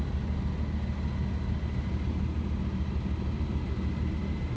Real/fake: real